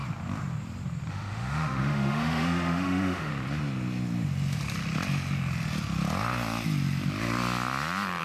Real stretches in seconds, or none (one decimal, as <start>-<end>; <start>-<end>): 0.0-1.1; 3.3-8.2